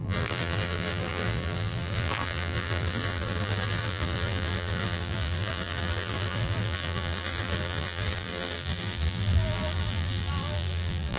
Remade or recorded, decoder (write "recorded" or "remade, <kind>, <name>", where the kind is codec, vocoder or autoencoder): remade, vocoder, BigVGAN v2